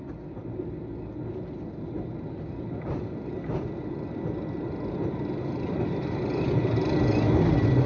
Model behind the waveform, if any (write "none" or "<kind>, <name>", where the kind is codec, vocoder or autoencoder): none